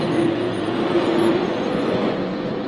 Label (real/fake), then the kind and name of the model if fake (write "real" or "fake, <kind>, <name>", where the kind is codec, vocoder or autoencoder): fake, vocoder, Vocos